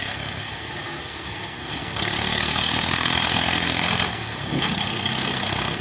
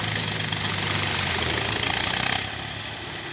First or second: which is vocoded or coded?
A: first